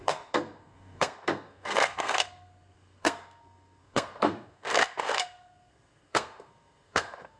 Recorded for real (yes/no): no